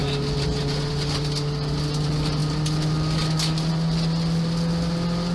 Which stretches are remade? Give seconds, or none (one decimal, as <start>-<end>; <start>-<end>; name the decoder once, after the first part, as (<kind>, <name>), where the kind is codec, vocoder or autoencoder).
none